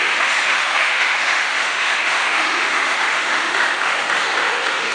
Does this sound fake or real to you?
fake